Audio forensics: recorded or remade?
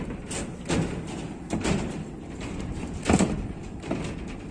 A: recorded